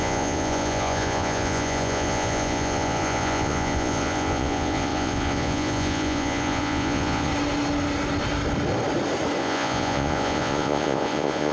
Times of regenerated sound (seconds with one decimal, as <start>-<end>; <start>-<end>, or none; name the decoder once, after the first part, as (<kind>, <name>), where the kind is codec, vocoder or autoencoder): 0.0-7.3 (vocoder, Vocos); 9.4-11.5